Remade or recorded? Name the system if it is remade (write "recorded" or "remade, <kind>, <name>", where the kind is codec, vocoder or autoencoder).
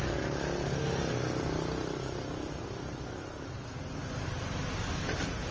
recorded